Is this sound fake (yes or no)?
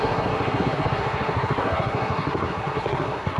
yes